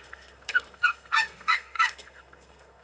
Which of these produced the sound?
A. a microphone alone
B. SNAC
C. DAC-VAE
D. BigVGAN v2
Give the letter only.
B